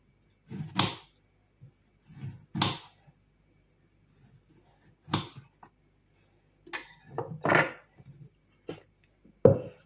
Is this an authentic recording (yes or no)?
yes